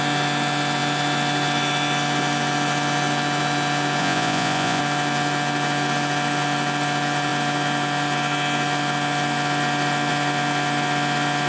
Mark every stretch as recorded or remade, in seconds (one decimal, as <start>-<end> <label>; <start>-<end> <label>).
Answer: 0.0-4.0 recorded; 4.0-4.8 remade; 4.8-11.5 recorded